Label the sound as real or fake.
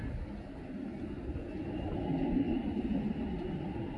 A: real